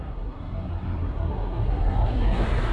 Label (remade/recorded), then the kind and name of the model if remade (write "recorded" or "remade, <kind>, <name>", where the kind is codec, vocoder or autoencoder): remade, codec, SNAC